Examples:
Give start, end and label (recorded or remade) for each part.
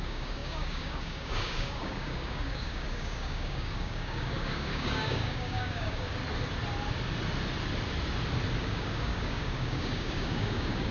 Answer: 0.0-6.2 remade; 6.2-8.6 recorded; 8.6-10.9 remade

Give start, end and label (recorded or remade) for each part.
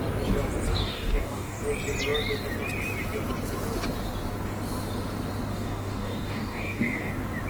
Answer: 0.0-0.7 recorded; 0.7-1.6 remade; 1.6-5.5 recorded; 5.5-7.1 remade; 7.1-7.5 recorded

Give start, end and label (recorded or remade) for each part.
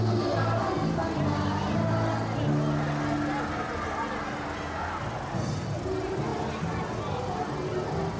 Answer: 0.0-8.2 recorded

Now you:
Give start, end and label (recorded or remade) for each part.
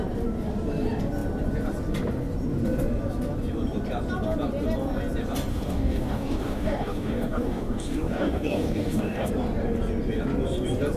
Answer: 0.0-5.5 recorded; 5.5-9.3 remade; 9.3-11.0 recorded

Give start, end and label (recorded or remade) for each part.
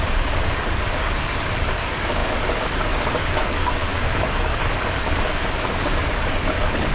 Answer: 0.0-6.9 remade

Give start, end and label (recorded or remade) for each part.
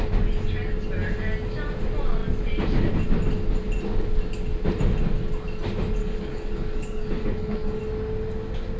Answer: 0.0-6.0 recorded; 6.0-7.8 remade; 7.8-8.8 recorded